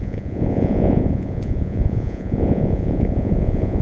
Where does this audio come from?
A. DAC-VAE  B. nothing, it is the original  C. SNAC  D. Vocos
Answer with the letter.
D